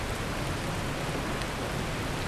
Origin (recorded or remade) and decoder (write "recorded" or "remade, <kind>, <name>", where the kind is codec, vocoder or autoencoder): recorded